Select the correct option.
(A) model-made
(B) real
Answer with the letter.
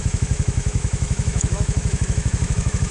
A